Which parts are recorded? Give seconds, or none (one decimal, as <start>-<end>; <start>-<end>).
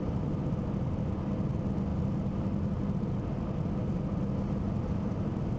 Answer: 0.0-5.6